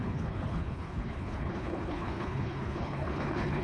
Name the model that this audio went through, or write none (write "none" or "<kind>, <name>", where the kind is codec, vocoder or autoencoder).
codec, HILCodec